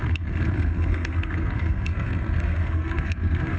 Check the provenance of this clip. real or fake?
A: fake